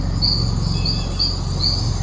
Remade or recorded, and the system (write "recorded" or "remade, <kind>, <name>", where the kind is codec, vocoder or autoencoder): recorded